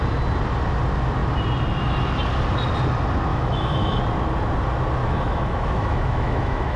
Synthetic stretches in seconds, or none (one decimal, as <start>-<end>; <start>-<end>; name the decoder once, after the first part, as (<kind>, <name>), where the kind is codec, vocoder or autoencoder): 3.3-4.0 (autoencoder, DAC-VAE); 5.0-6.8